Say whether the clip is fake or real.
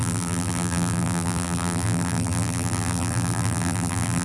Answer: fake